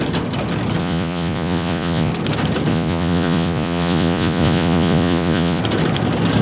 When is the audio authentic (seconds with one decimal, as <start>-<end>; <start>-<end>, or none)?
0.0-0.8; 2.1-2.7; 5.6-6.4